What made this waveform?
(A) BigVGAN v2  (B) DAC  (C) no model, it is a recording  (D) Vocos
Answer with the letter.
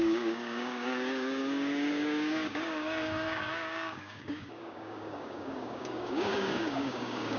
B